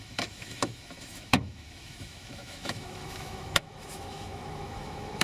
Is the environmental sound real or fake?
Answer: fake